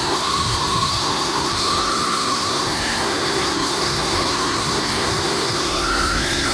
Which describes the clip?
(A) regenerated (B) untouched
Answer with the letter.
A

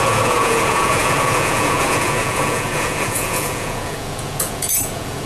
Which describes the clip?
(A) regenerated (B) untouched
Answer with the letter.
A